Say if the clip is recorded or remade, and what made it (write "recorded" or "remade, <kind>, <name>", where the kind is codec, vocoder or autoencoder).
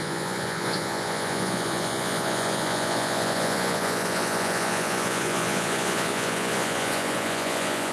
remade, vocoder, Vocos